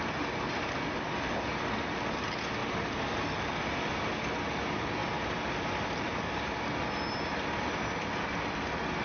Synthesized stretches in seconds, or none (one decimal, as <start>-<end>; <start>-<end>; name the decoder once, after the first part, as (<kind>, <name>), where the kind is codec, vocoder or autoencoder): 5.0-6.6 (vocoder, BigVGAN v2)